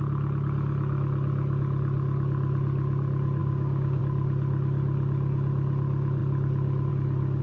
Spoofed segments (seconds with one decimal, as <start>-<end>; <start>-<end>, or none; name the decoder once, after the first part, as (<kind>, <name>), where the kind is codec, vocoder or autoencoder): 3.4-4.0 (codec, DAC)

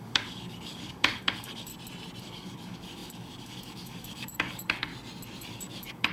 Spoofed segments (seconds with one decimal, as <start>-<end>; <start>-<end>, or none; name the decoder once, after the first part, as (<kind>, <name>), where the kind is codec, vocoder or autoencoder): 0.0-1.7 (codec, DAC); 2.2-4.9; 5.5-6.1

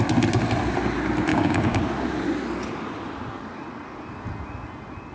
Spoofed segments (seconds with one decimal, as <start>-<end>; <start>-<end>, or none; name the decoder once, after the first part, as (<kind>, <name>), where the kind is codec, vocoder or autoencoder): 1.3-1.8 (codec, DAC)

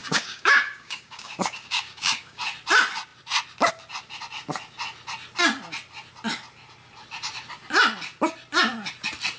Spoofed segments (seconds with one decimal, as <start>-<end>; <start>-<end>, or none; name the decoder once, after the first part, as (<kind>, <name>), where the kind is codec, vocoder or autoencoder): 0.0-2.4 (codec, DAC)

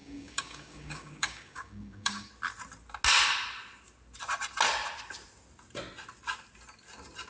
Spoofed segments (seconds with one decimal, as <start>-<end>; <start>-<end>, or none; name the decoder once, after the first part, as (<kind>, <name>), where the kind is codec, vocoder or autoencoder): 0.0-2.3 (codec, DAC)

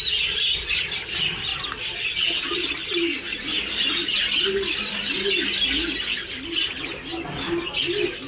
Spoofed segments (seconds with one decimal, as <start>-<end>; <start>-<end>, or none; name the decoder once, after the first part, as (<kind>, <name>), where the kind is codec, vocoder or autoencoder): none

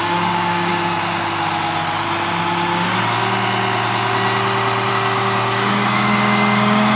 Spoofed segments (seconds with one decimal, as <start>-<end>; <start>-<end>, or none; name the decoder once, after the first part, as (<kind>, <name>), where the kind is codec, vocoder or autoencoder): 0.0-0.7 (codec, DAC); 4.9-7.0

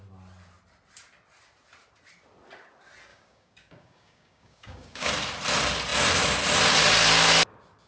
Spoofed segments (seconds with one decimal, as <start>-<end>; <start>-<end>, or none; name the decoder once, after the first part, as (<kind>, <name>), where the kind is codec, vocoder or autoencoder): 3.1-5.1 (codec, DAC)